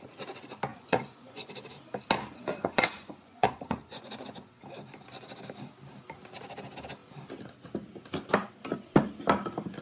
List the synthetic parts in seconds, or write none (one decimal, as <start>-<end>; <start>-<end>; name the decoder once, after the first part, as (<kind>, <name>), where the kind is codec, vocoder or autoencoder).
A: 0.7-1.5 (vocoder, Vocos); 2.6-4.6